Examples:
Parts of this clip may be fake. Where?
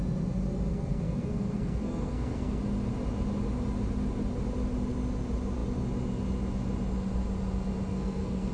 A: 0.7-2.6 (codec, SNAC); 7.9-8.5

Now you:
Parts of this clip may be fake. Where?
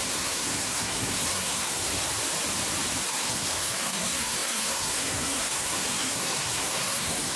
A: 0.0-2.1 (codec, SNAC); 3.1-7.4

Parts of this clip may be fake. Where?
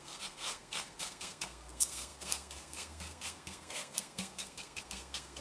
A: 0.0-5.4 (codec, SNAC)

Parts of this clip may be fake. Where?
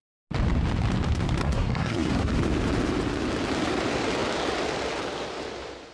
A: 1.4-2.3 (codec, SNAC)